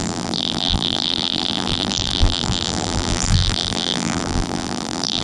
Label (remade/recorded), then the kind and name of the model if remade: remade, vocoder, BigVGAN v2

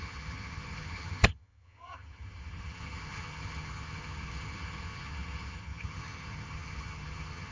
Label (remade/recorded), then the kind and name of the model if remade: remade, vocoder, HiFi-GAN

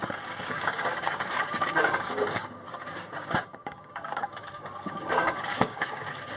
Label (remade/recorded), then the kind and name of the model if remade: remade, codec, DAC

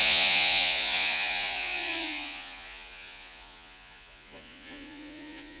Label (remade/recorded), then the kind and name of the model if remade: remade, vocoder, Vocos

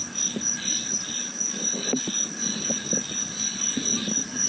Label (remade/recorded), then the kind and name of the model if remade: recorded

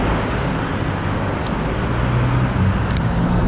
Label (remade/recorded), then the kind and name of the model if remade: recorded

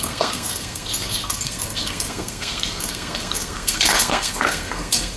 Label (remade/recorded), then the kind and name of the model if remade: remade, codec, SNAC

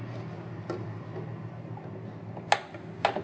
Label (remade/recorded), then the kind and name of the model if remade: recorded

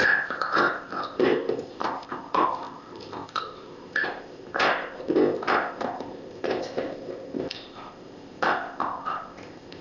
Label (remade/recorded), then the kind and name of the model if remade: remade, codec, ZipCodec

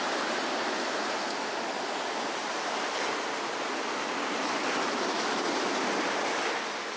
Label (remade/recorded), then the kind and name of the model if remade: recorded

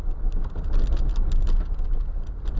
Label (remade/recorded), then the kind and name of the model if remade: recorded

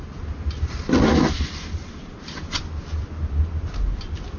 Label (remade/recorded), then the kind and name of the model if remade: recorded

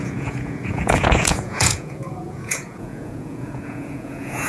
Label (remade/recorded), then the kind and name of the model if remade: remade, vocoder, Vocos